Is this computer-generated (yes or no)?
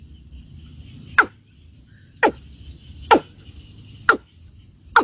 no